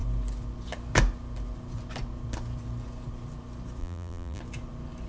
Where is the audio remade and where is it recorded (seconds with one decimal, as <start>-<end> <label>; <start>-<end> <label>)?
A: 0.0-3.8 recorded; 3.8-4.4 remade; 4.4-5.1 recorded